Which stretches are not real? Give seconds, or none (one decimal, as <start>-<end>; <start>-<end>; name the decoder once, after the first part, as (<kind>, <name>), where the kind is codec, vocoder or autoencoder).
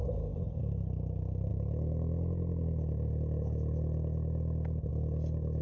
none